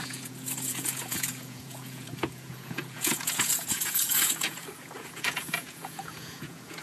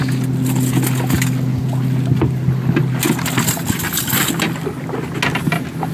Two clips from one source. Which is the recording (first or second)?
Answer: second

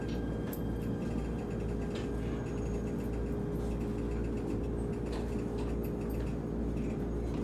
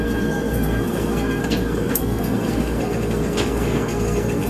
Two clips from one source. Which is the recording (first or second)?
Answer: first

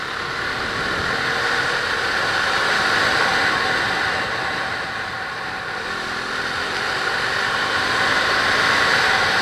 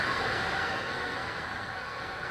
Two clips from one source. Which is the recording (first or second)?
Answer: first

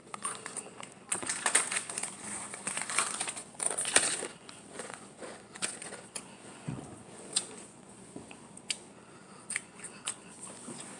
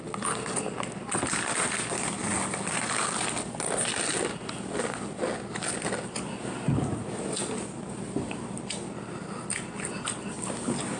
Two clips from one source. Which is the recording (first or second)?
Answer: second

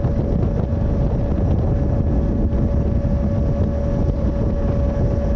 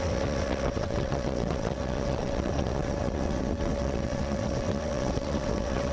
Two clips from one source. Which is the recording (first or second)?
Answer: first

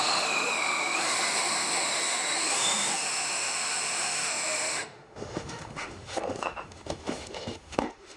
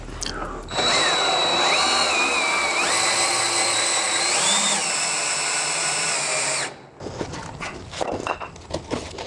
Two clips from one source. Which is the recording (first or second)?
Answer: second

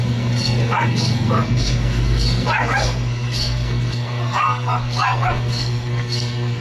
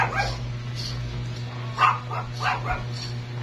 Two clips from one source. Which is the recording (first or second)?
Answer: second